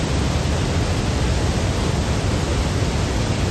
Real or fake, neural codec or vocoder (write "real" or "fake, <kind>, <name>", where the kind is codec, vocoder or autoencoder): real